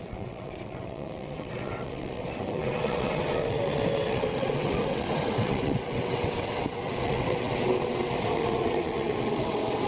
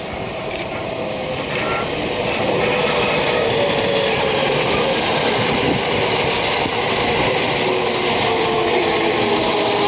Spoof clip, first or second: first